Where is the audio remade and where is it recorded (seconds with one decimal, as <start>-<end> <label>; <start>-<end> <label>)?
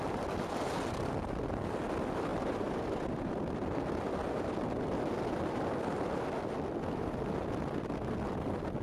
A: 0.0-2.3 recorded; 2.3-3.3 remade; 3.3-8.8 recorded